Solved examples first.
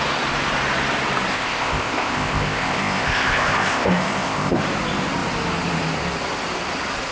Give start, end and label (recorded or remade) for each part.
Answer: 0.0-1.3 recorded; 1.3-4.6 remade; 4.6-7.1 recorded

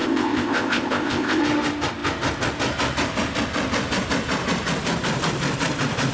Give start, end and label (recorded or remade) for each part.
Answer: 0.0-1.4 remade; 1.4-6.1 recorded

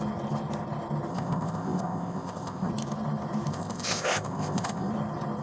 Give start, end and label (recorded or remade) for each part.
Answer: 0.0-1.1 recorded; 1.1-2.7 remade; 2.7-3.5 recorded; 3.5-4.9 remade; 4.9-5.4 recorded